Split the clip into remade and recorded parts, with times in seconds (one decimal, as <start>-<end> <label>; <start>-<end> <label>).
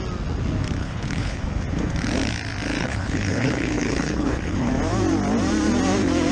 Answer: 0.0-0.8 recorded; 0.8-1.4 remade; 1.4-2.8 recorded; 2.8-4.7 remade; 4.7-6.3 recorded